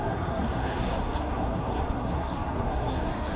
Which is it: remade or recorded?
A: remade